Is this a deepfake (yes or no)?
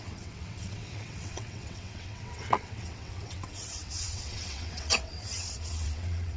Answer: yes